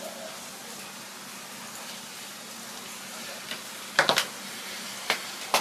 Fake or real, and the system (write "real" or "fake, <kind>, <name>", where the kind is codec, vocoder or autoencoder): real